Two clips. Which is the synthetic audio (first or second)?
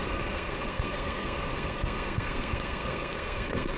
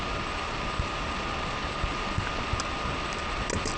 first